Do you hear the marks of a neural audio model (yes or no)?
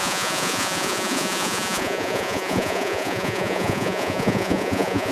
yes